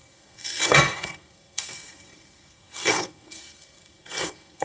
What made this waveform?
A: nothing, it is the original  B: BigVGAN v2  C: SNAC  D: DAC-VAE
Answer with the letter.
C